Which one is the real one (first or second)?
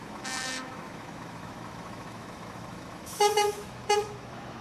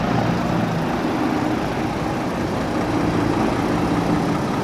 second